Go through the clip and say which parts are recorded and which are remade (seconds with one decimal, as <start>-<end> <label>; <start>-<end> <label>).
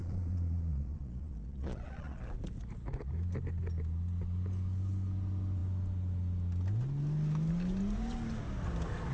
0.0-2.2 remade; 2.2-9.1 recorded